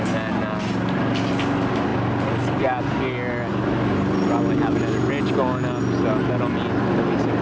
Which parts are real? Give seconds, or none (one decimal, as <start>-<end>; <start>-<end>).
0.0-7.4